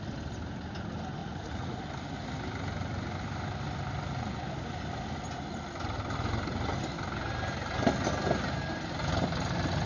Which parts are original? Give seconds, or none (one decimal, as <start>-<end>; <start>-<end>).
0.0-1.2; 1.8-9.9